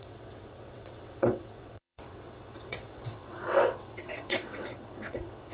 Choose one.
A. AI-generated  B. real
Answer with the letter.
A